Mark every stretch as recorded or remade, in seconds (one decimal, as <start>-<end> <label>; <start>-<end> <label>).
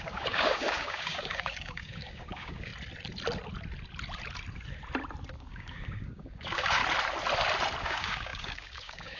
0.0-2.7 remade; 2.7-5.3 recorded; 5.3-6.8 remade; 6.8-7.8 recorded; 7.8-9.2 remade